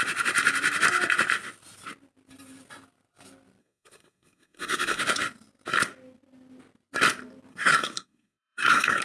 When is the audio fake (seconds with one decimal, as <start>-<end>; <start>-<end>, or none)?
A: 3.6-5.0; 7.5-9.0

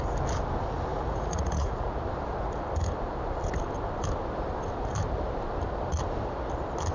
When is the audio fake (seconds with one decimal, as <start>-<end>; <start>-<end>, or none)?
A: 0.9-2.0

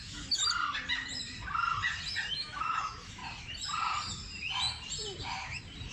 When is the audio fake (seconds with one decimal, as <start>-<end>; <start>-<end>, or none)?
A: 0.0-0.4; 2.3-3.2

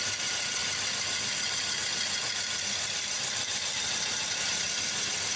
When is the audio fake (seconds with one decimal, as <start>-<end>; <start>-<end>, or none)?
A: none

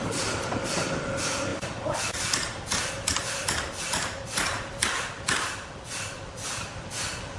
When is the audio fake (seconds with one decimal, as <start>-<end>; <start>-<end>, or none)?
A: none